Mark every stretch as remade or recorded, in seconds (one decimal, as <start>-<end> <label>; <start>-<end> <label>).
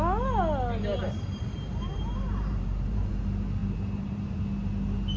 0.0-0.9 recorded; 0.9-3.1 remade; 3.1-3.6 recorded; 3.6-4.4 remade; 4.4-5.2 recorded